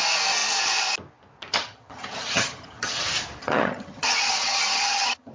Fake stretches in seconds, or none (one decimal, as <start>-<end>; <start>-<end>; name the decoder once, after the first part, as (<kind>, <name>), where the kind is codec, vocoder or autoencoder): 1.5-3.0 (vocoder, HiFi-GAN); 3.4-5.3

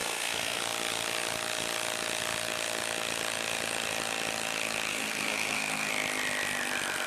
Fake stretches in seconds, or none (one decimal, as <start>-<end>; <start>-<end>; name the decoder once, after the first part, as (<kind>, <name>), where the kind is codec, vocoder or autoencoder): 0.0-0.6 (codec, SNAC); 4.9-5.9

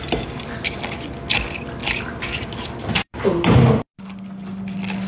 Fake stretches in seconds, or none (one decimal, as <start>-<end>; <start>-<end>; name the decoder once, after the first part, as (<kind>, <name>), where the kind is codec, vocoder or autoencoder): none

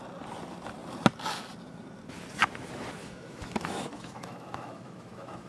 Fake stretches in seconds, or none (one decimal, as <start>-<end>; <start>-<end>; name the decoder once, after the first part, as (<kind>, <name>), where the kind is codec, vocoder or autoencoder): 3.0-5.5 (autoencoder, DAC-VAE)

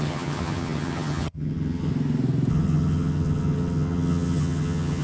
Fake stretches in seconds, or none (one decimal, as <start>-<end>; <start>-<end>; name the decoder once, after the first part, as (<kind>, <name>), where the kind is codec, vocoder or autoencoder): 0.0-1.9 (vocoder, HiFi-GAN); 2.5-5.0

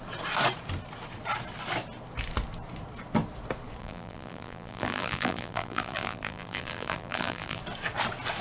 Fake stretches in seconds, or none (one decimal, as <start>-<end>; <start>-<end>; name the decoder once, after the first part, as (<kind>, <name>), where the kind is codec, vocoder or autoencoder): 3.8-7.6 (vocoder, BigVGAN v2)